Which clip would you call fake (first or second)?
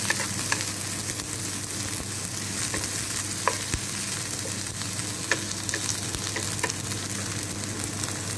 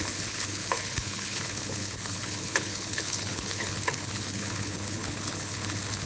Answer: second